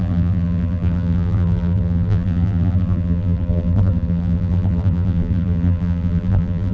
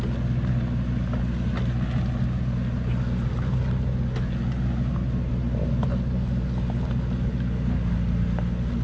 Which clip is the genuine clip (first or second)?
second